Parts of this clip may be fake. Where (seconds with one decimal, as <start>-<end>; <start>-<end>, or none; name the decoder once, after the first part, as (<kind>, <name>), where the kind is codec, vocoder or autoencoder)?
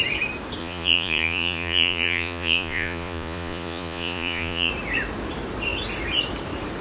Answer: 0.6-4.7 (vocoder, Vocos)